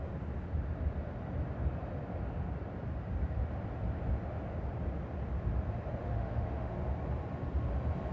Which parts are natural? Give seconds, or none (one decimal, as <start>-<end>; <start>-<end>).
0.0-6.0; 6.7-8.1